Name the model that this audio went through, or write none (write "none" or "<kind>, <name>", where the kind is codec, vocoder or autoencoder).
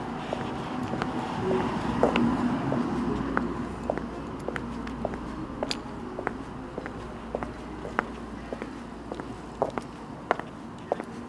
none